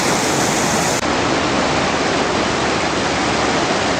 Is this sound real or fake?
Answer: fake